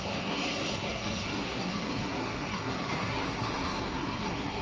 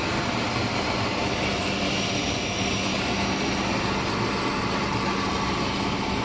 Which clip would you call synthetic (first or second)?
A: first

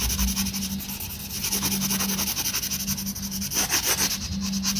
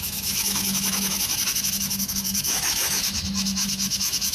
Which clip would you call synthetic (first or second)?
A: second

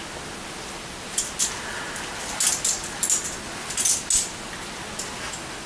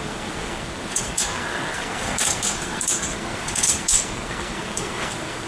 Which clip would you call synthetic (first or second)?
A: second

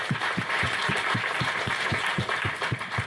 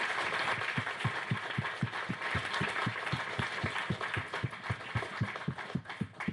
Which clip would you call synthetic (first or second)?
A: first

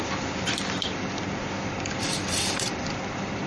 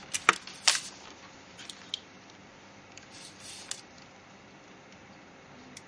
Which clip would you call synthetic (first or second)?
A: first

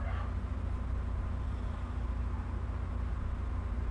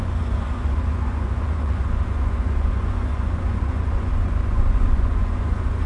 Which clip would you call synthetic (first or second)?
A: second